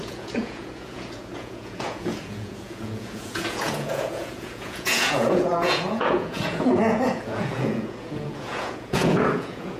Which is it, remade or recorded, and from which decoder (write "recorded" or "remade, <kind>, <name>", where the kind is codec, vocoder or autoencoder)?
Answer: remade, vocoder, Vocos